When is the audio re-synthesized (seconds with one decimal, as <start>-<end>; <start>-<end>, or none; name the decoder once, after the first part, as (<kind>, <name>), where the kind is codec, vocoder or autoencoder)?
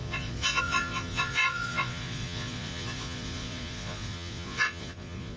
0.0-5.4 (vocoder, Vocos)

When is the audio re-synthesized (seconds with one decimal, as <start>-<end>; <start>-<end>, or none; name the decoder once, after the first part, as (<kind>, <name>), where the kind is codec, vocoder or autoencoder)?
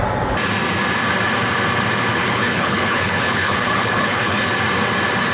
2.2-4.5 (codec, HILCodec)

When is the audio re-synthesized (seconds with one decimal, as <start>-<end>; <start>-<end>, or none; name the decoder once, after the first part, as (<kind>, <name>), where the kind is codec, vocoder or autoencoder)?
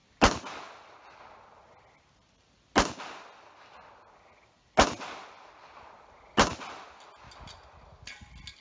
none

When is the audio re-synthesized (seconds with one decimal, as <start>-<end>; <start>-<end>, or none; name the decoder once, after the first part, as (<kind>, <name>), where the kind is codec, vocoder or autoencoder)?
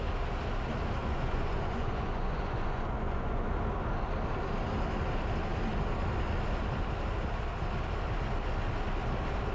1.0-3.5 (vocoder, Vocos)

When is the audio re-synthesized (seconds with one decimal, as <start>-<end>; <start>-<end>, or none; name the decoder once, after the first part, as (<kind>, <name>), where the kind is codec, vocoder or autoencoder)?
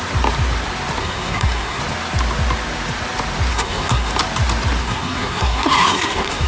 1.0-1.8 (codec, SNAC); 3.5-4.1; 4.8-6.5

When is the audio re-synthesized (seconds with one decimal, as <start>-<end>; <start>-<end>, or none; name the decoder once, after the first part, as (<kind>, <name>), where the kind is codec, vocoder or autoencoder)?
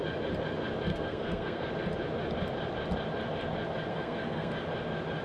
0.9-1.7 (codec, SNAC); 3.9-4.5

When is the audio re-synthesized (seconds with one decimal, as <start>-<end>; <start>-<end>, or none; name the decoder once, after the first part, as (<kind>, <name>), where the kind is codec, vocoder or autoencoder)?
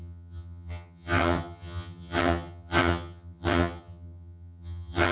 0.0-5.1 (vocoder, HiFi-GAN)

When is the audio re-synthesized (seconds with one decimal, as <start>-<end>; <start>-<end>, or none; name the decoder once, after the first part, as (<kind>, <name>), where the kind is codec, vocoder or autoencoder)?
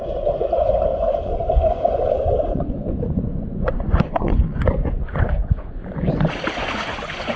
0.0-7.4 (vocoder, Vocos)